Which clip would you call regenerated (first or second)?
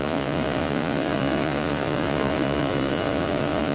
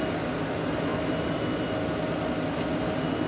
first